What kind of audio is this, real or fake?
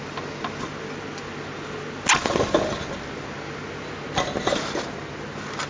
real